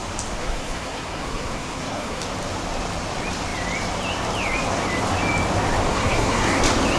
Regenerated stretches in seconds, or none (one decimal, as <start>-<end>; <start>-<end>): 0.4-2.2; 5.9-6.6